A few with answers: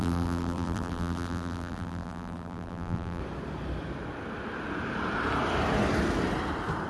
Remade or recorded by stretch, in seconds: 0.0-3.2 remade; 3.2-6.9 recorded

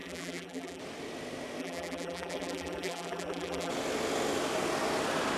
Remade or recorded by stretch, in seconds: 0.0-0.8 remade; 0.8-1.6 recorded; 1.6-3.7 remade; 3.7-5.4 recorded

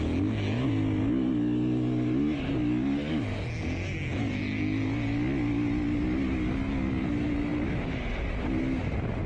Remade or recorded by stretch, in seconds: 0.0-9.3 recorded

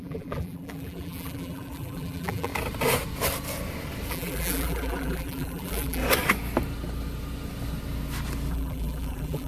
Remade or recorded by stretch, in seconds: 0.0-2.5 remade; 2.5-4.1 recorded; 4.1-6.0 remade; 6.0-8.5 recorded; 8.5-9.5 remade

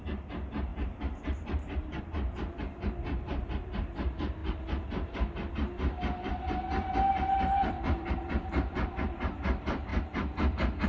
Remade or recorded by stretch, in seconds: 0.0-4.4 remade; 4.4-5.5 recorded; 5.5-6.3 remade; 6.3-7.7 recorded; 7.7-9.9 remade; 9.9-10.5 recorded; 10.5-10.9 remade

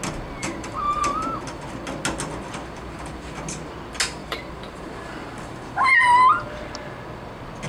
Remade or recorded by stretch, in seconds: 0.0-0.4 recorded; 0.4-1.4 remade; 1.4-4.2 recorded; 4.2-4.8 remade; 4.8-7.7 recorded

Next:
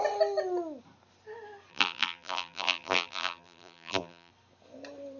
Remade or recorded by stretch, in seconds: 0.0-1.7 recorded; 1.7-4.3 remade; 4.3-5.2 recorded

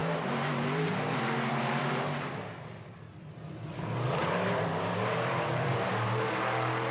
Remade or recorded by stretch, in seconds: 0.0-2.4 remade; 2.4-4.2 recorded; 4.2-5.9 remade; 5.9-6.9 recorded